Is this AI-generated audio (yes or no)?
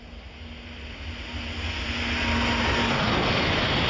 no